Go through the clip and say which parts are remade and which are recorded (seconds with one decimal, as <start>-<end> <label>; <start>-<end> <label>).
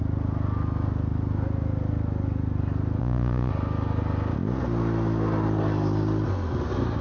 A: 0.0-3.0 recorded; 3.0-3.5 remade; 3.5-7.0 recorded